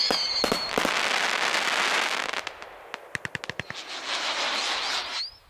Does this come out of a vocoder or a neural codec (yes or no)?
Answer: no